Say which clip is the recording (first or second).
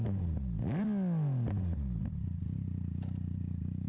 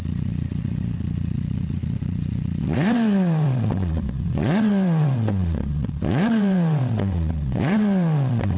first